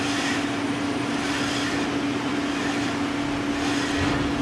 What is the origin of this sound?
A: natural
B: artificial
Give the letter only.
A